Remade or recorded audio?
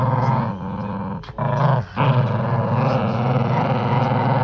recorded